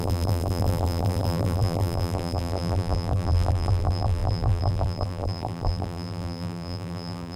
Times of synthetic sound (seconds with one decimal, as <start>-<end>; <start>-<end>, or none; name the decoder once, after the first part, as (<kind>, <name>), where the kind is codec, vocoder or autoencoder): 0.0-7.4 (vocoder, BigVGAN v2)